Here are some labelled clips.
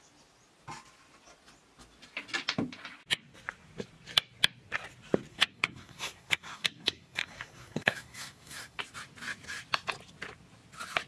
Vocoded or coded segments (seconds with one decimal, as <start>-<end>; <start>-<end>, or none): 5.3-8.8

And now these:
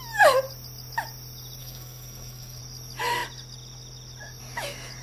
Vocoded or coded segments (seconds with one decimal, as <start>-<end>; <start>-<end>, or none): 1.6-2.6

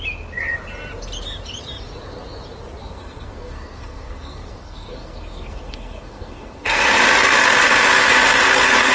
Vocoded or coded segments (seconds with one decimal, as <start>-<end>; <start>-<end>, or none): 2.8-6.8